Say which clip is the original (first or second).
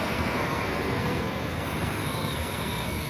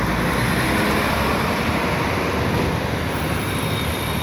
second